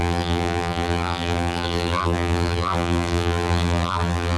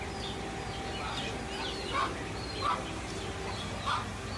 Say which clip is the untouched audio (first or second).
second